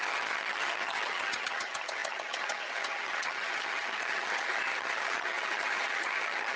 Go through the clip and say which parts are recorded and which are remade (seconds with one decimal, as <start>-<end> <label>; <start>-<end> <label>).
0.0-6.6 remade